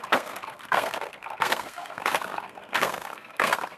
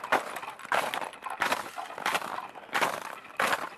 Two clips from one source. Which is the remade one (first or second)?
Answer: first